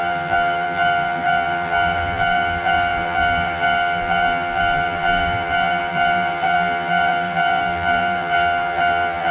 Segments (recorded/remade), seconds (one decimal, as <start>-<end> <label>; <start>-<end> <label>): 0.0-9.3 remade